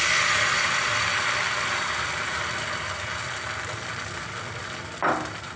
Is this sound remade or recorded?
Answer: recorded